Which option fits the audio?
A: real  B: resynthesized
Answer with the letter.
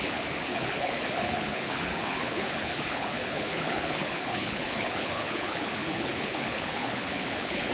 B